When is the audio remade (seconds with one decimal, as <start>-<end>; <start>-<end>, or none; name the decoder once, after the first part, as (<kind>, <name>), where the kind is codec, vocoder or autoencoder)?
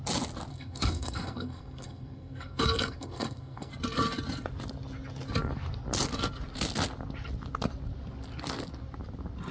0.5-3.7 (codec, SNAC)